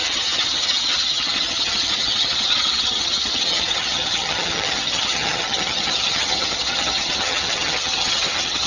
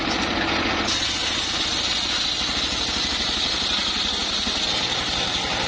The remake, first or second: first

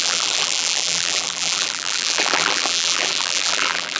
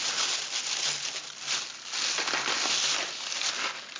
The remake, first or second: first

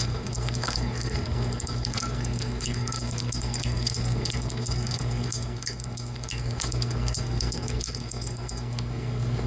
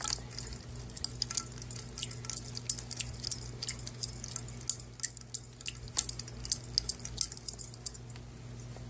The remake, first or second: first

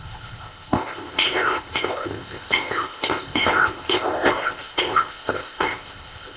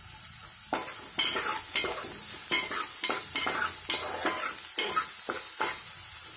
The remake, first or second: first